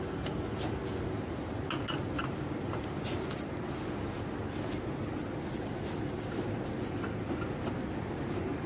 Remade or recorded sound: recorded